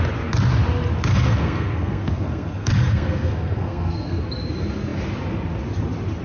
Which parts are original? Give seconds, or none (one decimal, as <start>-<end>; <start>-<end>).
0.0-1.1; 4.2-6.2